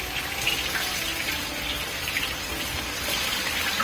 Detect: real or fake real